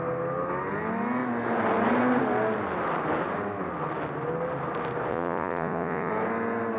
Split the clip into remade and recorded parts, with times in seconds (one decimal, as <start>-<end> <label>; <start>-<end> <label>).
0.0-5.1 recorded; 5.1-6.1 remade; 6.1-6.8 recorded